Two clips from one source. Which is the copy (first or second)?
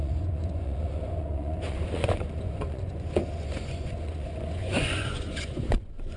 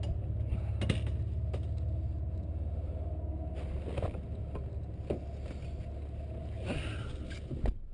first